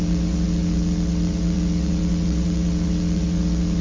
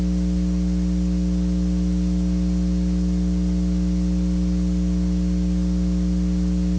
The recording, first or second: second